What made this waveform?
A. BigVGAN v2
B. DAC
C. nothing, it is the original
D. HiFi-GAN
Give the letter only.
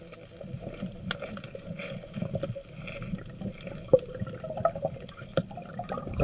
C